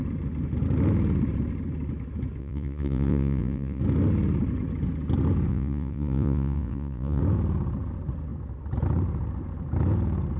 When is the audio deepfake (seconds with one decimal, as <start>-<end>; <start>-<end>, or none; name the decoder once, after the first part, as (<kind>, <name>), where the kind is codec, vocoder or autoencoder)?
2.4-3.8 (vocoder, Vocos); 5.5-7.2